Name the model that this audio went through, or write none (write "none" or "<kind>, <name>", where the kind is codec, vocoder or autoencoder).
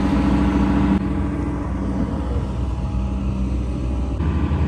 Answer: none